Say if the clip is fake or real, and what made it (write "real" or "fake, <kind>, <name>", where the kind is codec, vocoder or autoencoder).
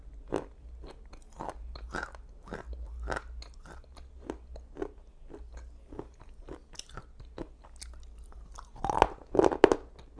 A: real